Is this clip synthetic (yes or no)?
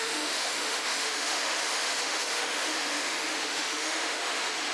yes